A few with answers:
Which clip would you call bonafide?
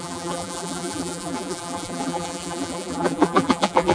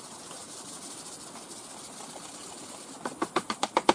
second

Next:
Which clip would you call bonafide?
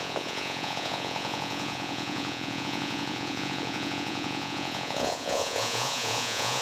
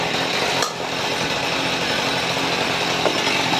second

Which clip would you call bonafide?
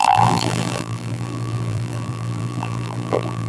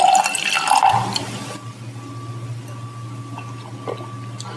second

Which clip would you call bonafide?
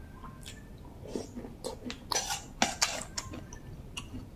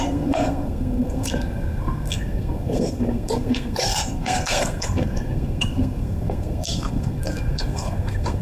first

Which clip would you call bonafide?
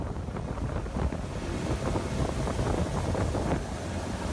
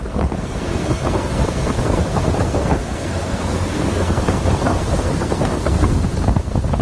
first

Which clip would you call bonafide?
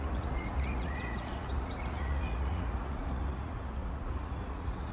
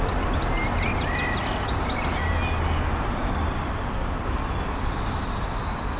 second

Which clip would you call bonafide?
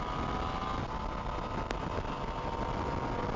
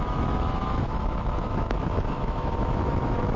first